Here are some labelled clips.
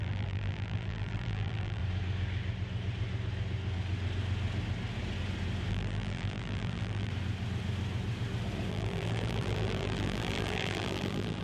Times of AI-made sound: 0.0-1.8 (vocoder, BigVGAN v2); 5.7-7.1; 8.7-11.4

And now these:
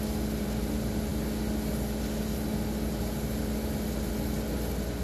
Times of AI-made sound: none

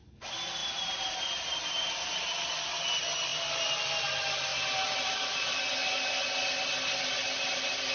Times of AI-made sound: 0.6-2.9 (vocoder, BigVGAN v2); 4.5-5.6

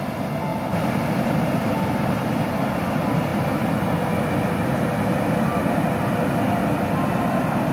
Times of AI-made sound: 0.5-2.3 (vocoder, BigVGAN v2)

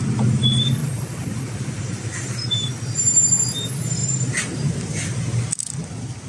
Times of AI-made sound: 0.8-3.3 (vocoder, BigVGAN v2); 4.0-4.8